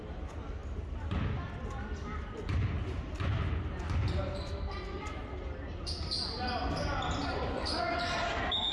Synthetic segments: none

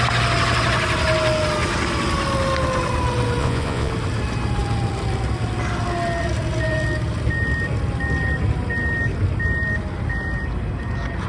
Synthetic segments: 3.4-3.9 (vocoder, Vocos)

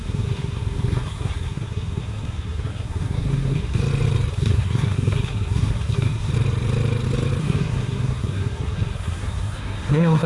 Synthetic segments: 0.0-3.8 (codec, SNAC); 4.3-6.3; 7.4-10.3

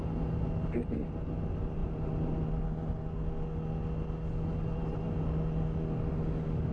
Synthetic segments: none

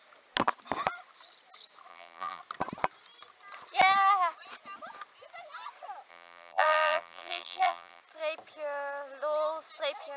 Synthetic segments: 1.9-2.4 (vocoder, BigVGAN v2); 6.1-8.0

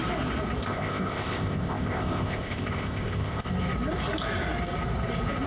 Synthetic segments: 0.6-3.5 (codec, ZipCodec)